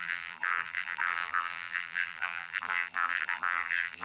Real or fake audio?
fake